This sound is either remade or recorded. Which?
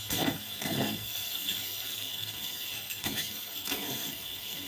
remade